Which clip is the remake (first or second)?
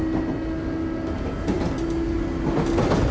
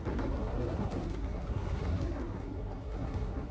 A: second